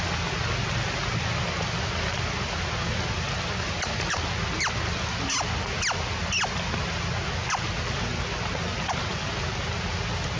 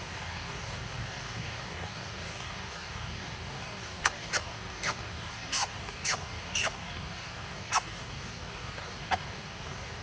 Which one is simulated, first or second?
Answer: second